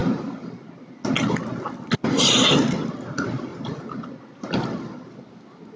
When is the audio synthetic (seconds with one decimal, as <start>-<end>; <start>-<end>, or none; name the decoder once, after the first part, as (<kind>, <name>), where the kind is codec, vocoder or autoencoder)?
none